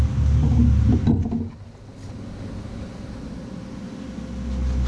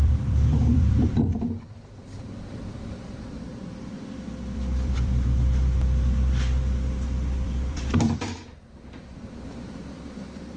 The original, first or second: first